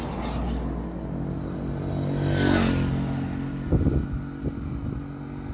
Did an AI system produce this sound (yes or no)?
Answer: no